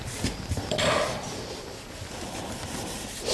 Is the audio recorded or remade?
remade